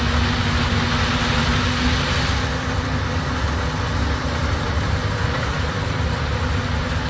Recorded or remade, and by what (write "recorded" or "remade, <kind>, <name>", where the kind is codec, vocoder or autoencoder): recorded